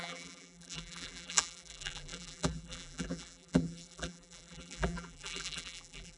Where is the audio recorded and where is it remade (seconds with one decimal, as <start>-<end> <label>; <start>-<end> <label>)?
0.0-6.2 remade

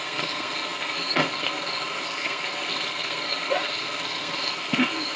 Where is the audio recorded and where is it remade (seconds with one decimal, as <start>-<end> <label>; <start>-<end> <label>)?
0.0-5.2 remade